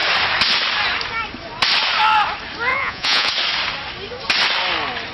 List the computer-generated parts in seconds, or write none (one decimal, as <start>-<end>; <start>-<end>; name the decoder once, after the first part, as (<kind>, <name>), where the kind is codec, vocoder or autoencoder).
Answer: 2.7-3.3 (vocoder, Vocos)